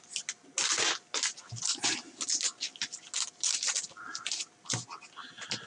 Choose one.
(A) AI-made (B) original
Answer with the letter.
B